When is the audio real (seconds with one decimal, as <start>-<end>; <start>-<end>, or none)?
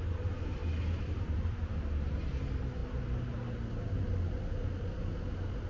0.0-0.6; 1.7-5.7